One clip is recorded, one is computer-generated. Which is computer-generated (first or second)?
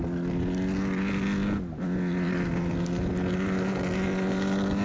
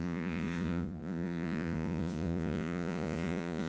second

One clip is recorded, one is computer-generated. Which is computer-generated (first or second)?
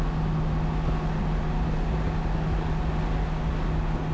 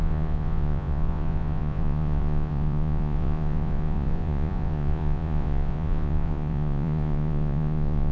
second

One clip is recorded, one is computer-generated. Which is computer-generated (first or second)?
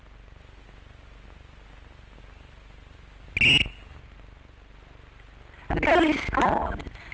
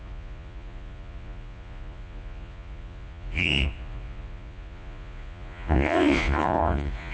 second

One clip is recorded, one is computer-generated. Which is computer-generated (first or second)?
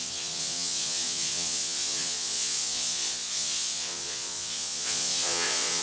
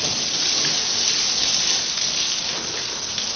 first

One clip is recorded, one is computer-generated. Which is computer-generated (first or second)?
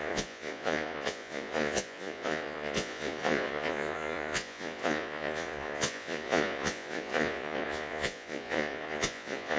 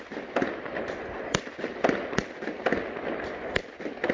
first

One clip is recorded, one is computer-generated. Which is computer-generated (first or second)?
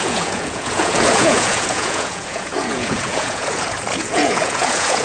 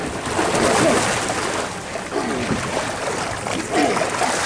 first